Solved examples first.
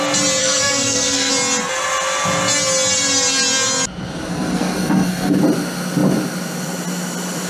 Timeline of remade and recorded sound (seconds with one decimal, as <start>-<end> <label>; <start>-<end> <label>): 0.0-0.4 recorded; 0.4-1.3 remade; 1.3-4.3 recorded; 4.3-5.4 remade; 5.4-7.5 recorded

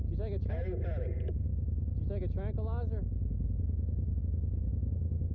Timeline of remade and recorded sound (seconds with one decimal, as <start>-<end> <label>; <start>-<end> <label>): 0.0-5.3 recorded

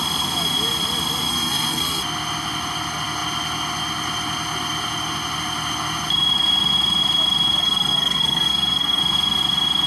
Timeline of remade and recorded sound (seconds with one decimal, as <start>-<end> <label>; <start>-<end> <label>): 0.0-1.3 recorded; 1.3-2.0 remade; 2.0-7.6 recorded; 7.6-9.0 remade; 9.0-9.9 recorded

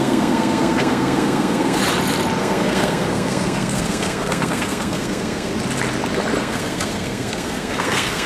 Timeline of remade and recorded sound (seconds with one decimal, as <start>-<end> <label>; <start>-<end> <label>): 0.0-1.8 remade; 1.8-2.4 recorded; 2.4-5.5 remade; 5.5-6.4 recorded; 6.4-8.3 remade

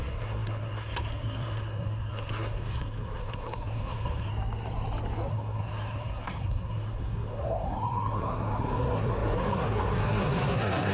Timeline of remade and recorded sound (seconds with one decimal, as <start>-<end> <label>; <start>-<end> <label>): 0.0-4.3 remade; 4.3-5.3 recorded; 5.3-10.9 remade

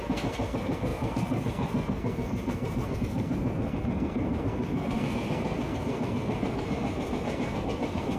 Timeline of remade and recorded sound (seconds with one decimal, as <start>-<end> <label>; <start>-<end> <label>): 0.0-8.2 remade

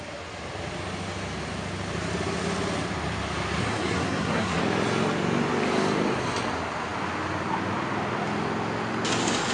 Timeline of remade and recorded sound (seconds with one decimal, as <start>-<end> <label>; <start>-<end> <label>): 0.0-3.6 recorded; 3.6-4.6 remade; 4.6-9.5 recorded